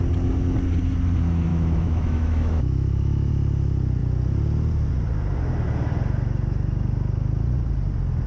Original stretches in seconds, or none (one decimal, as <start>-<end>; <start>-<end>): 0.0-1.5; 3.3-8.3